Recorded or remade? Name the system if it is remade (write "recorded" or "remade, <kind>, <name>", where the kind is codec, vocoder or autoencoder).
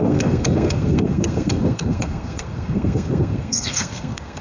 remade, codec, SNAC